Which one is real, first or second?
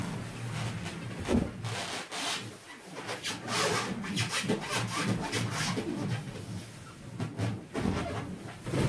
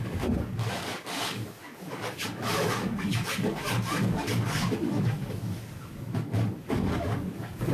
first